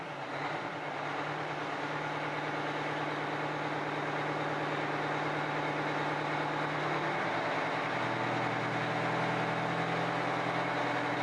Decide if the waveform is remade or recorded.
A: recorded